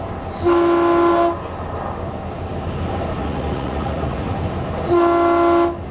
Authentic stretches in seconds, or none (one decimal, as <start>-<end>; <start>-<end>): 0.0-3.2; 4.3-5.9